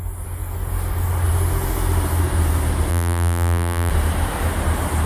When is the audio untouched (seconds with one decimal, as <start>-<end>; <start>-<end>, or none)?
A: 0.0-2.9; 3.9-5.1